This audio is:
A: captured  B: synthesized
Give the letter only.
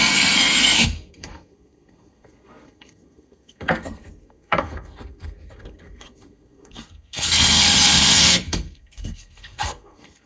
B